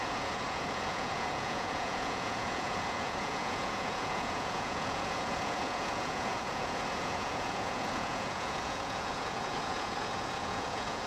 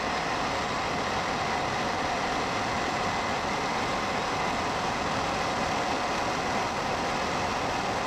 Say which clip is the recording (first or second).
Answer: second